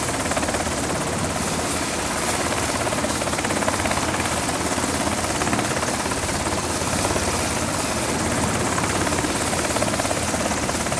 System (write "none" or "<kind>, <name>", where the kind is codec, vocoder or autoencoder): none